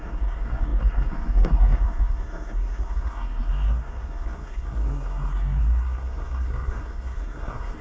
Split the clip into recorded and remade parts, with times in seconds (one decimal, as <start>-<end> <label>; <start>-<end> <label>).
0.0-7.8 remade